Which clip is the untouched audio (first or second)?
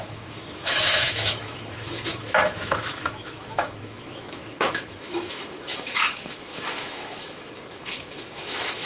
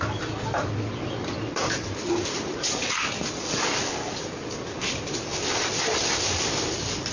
second